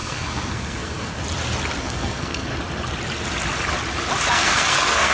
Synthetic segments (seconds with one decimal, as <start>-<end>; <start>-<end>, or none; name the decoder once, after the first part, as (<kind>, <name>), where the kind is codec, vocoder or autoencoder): 0.0-1.1 (codec, SNAC); 1.8-2.5; 4.3-5.1